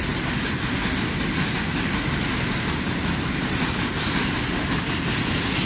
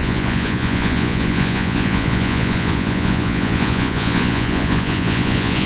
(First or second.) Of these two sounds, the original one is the first